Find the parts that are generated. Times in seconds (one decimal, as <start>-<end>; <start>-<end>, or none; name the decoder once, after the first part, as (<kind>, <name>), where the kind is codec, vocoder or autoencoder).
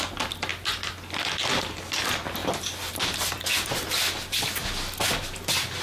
none